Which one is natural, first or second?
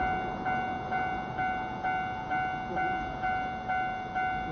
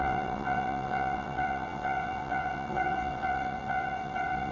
first